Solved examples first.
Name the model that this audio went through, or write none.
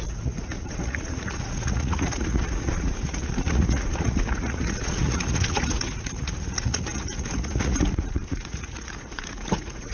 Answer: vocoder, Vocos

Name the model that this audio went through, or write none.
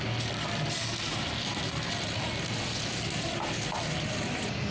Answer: none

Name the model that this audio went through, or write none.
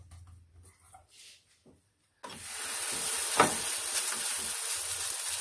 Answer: none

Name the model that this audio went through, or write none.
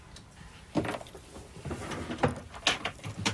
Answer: none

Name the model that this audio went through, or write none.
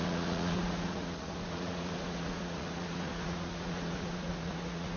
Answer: vocoder, Vocos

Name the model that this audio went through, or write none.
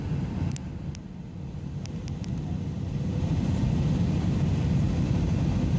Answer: none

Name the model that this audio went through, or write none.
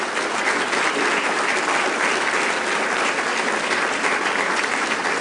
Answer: none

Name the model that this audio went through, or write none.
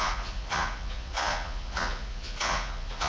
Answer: vocoder, Vocos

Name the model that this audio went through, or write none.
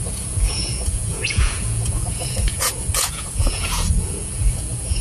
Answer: vocoder, Vocos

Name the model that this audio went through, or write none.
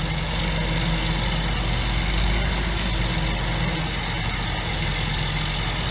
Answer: none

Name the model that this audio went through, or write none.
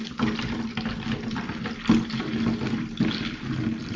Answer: none